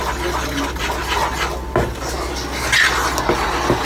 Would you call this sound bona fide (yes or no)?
yes